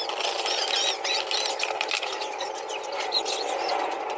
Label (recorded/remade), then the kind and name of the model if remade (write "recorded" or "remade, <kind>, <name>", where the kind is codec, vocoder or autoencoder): recorded